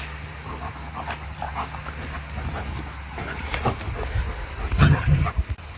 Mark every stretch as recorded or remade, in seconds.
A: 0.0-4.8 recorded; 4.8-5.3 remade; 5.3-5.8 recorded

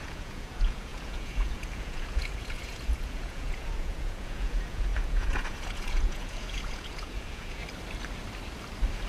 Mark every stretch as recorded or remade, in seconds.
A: 0.0-7.6 remade; 7.6-9.1 recorded

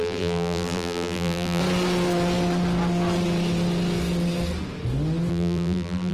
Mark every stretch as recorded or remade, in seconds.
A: 0.0-1.6 remade; 1.6-5.3 recorded; 5.3-6.1 remade

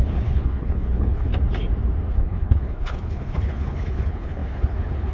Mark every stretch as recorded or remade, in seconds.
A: 0.0-1.3 remade; 1.3-2.1 recorded; 2.1-5.1 remade

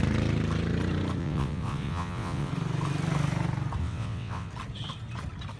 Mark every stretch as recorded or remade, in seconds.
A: 0.0-1.2 recorded; 1.2-2.5 remade; 2.5-3.8 recorded; 3.8-4.5 remade; 4.5-5.6 recorded

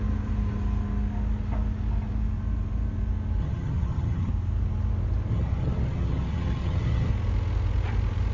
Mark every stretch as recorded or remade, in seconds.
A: 0.0-3.4 recorded; 3.4-4.3 remade; 4.3-5.3 recorded; 5.3-7.1 remade; 7.1-8.3 recorded